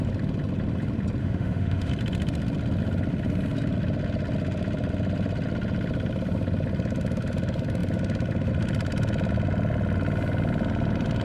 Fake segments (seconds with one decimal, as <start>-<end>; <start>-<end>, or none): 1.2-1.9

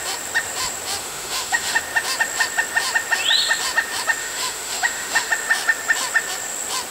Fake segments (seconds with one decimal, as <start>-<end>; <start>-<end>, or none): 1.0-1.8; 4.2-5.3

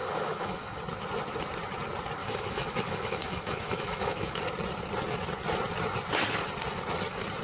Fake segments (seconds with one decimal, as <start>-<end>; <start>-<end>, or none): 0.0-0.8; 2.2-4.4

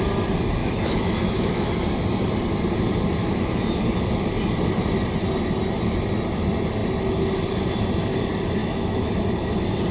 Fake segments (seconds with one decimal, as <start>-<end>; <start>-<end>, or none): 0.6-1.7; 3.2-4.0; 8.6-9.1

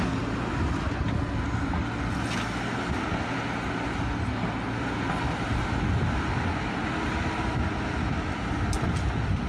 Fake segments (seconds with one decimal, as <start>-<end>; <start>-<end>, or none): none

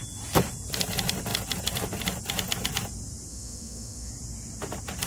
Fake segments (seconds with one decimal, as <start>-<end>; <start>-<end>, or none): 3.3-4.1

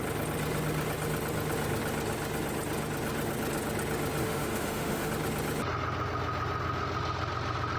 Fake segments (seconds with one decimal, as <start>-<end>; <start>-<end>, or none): 4.2-5.1

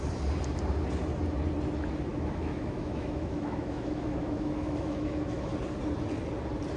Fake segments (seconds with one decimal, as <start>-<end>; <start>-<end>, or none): 2.1-5.5